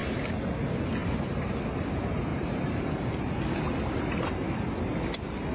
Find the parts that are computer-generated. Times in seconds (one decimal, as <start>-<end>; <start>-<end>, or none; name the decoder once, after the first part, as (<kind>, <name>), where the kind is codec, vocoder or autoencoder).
1.0-1.6 (vocoder, BigVGAN v2); 2.3-3.4

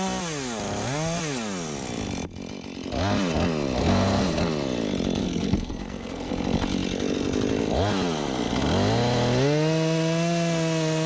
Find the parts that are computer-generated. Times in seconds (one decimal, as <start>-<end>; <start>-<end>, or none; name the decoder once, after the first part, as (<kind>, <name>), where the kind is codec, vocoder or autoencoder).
3.8-4.4 (codec, SNAC); 5.2-6.3

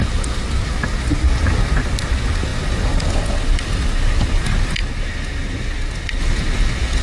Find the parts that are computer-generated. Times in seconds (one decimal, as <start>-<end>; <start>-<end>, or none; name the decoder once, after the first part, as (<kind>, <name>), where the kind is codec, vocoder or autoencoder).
none

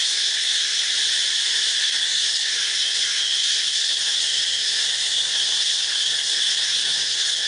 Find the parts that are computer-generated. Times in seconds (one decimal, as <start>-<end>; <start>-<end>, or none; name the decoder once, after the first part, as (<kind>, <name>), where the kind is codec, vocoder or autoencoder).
0.0-0.9 (codec, SNAC); 1.8-7.5

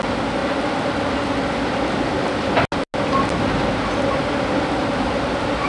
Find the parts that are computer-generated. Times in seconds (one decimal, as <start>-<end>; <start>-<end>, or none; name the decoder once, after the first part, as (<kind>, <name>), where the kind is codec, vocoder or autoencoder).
none